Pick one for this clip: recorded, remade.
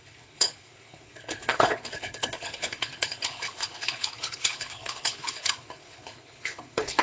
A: remade